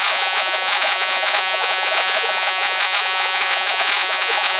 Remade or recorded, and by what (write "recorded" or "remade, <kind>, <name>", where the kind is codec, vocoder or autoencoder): remade, vocoder, Vocos